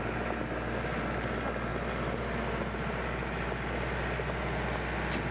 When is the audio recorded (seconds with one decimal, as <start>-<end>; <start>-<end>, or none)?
0.0-5.3